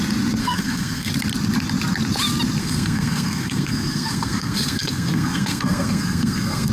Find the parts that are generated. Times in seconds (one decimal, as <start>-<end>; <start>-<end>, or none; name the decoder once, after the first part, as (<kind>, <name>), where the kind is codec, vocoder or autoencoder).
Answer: 0.4-1.1 (codec, SNAC); 2.6-6.7